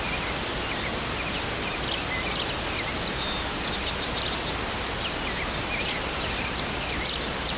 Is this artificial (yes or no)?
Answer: no